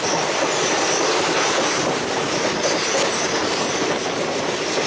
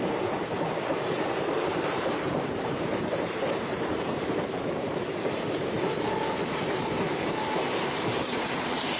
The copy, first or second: second